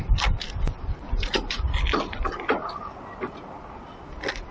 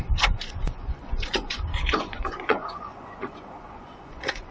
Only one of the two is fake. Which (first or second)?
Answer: second